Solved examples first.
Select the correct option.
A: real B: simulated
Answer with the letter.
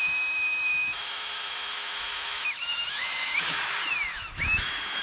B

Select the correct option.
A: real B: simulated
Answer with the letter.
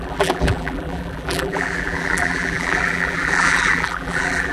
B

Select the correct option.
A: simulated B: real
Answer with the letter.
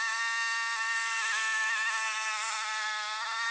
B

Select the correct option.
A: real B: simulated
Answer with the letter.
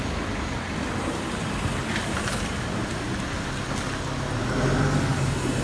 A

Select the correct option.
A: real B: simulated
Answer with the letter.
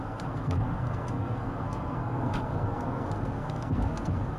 B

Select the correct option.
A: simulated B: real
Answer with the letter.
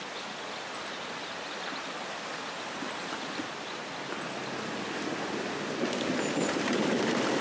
B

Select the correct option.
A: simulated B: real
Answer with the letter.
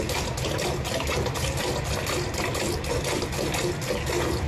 B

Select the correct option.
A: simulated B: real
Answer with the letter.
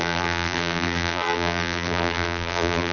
A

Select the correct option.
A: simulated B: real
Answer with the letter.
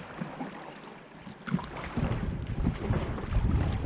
A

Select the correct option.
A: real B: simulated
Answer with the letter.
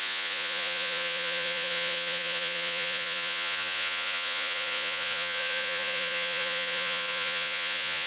B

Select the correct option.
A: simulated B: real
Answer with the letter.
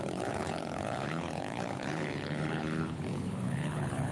A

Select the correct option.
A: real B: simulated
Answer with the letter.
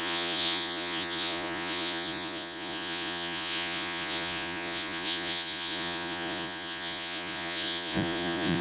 B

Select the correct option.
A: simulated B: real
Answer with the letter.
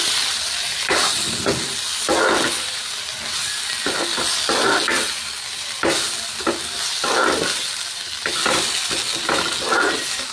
B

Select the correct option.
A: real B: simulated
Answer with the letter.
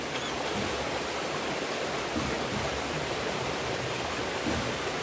A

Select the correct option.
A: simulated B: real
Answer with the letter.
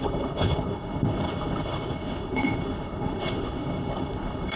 A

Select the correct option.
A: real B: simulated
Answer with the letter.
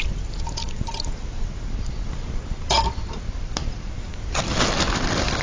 A